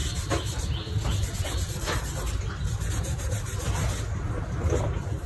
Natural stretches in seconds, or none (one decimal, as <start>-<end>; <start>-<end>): 0.0-5.3